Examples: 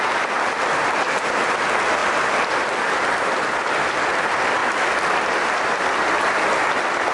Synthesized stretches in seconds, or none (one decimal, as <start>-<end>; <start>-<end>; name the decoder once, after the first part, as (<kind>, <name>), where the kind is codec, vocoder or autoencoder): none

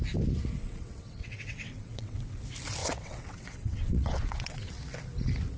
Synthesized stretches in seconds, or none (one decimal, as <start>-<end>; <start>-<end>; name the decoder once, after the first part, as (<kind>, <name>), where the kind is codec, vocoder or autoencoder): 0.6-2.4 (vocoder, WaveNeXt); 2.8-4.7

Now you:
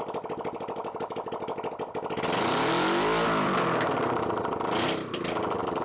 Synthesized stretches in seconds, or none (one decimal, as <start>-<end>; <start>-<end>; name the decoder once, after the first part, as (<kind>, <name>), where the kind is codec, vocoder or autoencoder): none

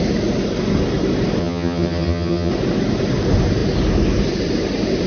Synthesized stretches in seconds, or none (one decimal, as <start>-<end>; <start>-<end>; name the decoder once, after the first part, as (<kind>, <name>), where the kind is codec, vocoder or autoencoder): 1.4-2.5 (vocoder, HiFi-GAN)

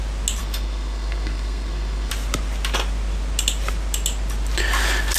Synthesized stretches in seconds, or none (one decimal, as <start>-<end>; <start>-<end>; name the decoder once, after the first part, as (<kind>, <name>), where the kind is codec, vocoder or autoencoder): 0.4-2.1 (codec, SNAC)

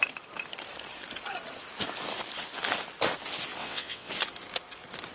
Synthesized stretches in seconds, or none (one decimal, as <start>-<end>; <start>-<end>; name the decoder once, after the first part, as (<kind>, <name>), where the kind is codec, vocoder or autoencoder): 3.6-4.1 (vocoder, WaveNeXt)